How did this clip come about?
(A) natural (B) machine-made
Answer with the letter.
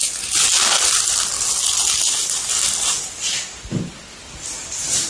A